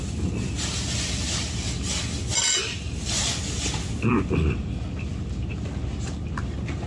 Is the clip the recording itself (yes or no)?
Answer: yes